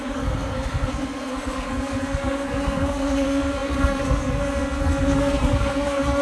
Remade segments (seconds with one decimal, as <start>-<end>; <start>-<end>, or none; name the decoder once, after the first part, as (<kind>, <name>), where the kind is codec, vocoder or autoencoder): 0.0-6.2 (codec, SNAC)